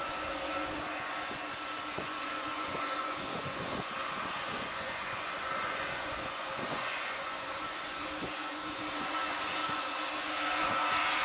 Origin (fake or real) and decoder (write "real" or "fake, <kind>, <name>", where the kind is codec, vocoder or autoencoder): fake, vocoder, Vocos